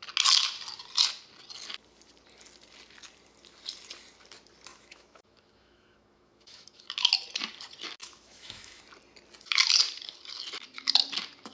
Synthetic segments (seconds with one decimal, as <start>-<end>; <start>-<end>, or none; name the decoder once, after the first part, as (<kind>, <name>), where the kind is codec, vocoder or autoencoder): 4.7-7.1 (autoencoder, DAC-VAE); 8.0-8.8